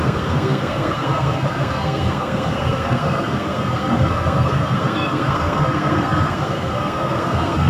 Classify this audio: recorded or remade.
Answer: remade